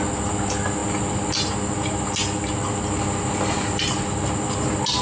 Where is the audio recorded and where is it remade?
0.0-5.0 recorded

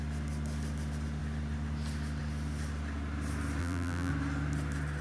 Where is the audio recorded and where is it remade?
0.0-3.6 recorded; 3.6-4.1 remade; 4.1-5.0 recorded